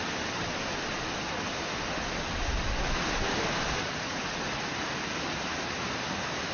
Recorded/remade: recorded